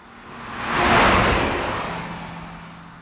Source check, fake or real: real